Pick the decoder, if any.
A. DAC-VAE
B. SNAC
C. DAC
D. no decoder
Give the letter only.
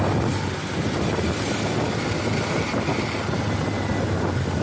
D